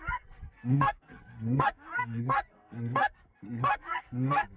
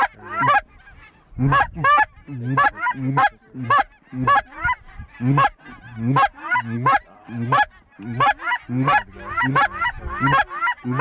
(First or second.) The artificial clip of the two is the first